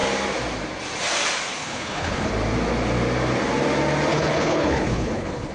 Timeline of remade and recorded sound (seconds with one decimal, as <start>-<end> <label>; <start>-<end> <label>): 0.0-1.6 recorded; 1.6-2.3 remade; 2.3-4.1 recorded; 4.1-5.5 remade